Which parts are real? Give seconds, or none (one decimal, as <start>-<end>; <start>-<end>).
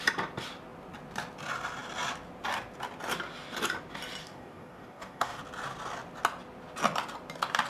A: 0.0-4.2; 5.4-7.7